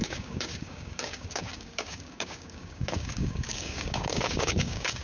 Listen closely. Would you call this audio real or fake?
fake